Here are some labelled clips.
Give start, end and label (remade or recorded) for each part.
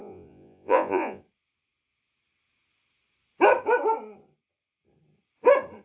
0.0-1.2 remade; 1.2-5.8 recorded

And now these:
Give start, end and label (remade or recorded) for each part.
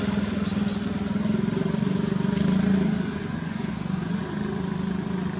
0.0-3.2 recorded; 3.2-4.2 remade; 4.2-5.4 recorded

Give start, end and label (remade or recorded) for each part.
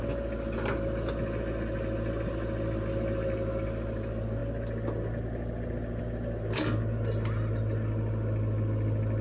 0.0-9.2 recorded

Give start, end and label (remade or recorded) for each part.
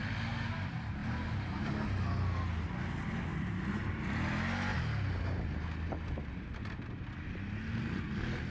0.0-1.0 recorded; 1.0-1.7 remade; 1.7-3.3 recorded; 3.3-3.9 remade; 3.9-8.5 recorded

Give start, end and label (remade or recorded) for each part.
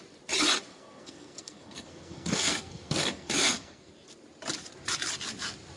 0.0-0.7 recorded; 0.7-3.9 remade; 3.9-5.8 recorded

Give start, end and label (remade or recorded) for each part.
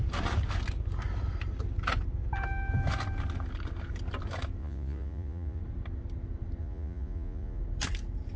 0.0-4.6 recorded; 4.6-5.6 remade; 5.6-6.6 recorded; 6.6-7.6 remade; 7.6-8.4 recorded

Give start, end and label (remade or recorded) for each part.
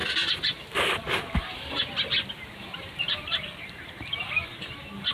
0.0-5.1 recorded